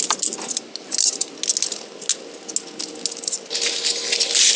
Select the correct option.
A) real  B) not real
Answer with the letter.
A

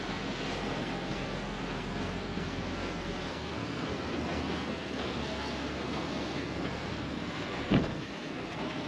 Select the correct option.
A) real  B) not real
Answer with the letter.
B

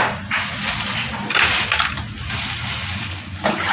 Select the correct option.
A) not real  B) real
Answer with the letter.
B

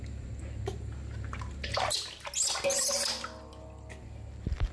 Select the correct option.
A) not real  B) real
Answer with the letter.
B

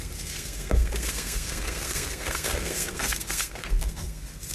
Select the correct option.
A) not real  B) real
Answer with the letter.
A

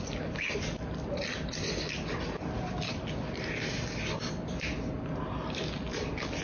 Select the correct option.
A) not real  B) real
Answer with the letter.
B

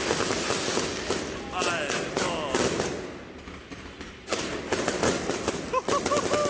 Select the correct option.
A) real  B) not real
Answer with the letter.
A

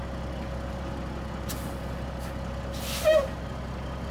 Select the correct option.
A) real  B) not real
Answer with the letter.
A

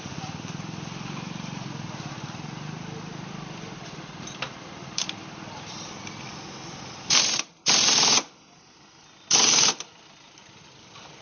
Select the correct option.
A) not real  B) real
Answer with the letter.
A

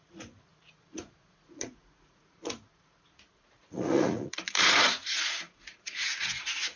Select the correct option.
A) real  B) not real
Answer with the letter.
B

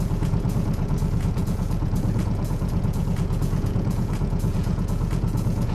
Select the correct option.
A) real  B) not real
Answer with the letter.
B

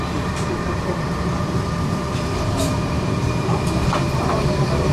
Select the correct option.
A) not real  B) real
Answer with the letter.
A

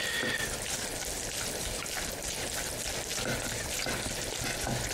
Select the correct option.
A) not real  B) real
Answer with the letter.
B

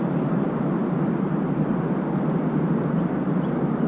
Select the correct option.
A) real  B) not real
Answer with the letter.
A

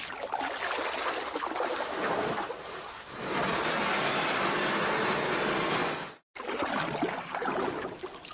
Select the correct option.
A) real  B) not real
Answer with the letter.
A